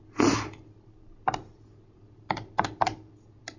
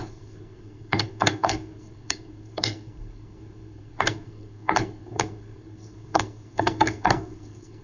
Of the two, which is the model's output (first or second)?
second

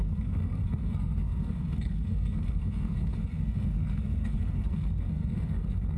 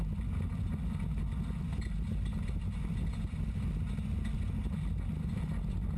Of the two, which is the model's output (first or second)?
first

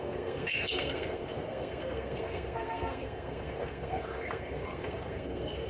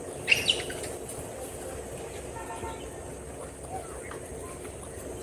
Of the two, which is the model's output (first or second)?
first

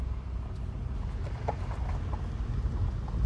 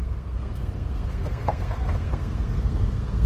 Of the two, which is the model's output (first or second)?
second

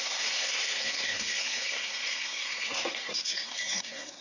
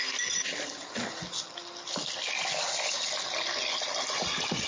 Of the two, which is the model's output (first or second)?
first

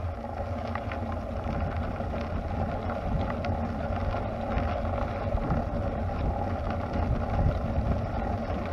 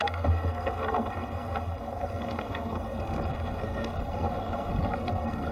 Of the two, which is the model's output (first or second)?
second